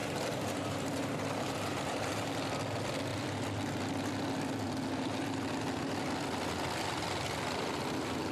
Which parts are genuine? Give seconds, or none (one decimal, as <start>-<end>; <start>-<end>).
2.3-8.3